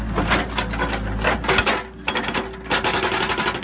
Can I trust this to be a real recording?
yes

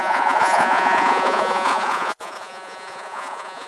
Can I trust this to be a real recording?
no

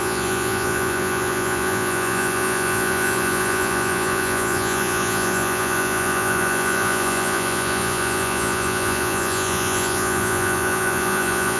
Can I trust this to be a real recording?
no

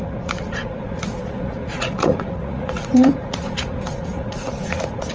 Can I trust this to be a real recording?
no